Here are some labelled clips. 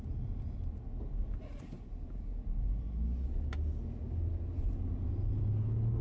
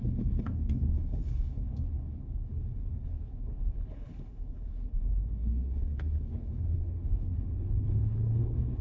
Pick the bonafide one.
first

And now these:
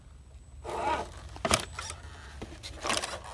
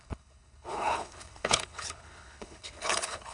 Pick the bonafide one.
first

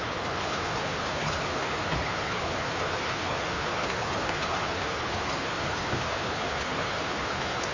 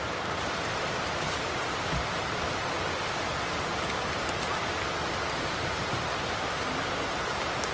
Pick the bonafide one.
second